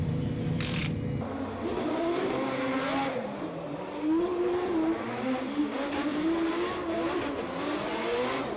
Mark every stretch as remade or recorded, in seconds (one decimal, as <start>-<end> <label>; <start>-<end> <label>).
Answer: 0.0-0.8 remade; 0.8-1.8 recorded; 1.8-8.6 remade